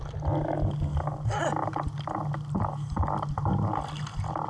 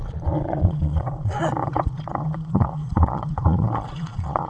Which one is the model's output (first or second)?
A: second